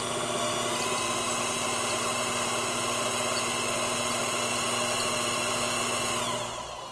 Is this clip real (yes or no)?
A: yes